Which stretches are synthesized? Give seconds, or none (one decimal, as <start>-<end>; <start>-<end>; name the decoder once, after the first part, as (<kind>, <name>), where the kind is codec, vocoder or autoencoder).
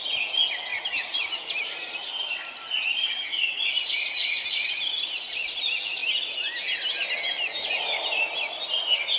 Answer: 0.7-3.7 (vocoder, BigVGAN v2)